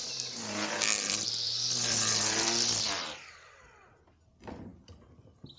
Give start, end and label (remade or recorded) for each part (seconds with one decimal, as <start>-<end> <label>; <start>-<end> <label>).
0.0-5.6 recorded